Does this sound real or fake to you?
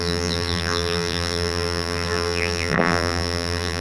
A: fake